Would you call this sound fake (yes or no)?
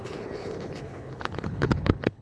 yes